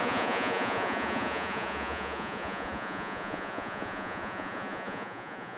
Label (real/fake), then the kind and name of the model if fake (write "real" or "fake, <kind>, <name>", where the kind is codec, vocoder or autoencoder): fake, vocoder, Vocos